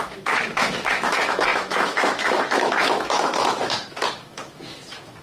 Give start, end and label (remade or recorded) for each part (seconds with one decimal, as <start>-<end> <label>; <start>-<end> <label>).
0.0-5.2 remade